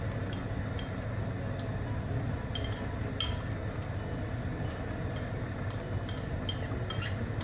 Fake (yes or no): no